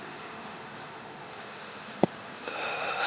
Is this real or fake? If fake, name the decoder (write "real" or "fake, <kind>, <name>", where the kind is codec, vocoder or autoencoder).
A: fake, autoencoder, DAC-VAE